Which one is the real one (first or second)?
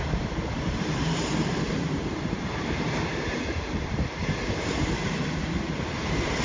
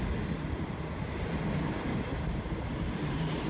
second